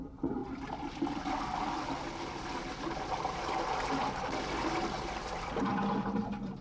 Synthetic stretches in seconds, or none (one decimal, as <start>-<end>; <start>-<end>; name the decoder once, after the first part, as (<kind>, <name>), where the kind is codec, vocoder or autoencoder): none